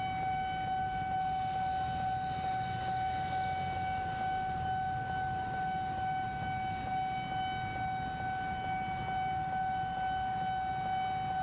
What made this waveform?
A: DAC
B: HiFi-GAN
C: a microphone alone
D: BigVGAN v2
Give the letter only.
C